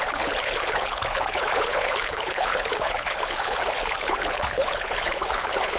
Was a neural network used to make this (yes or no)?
yes